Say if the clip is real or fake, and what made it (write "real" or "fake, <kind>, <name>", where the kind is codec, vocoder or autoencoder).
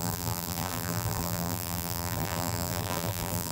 fake, vocoder, BigVGAN v2